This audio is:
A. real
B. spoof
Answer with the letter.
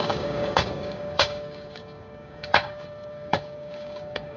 B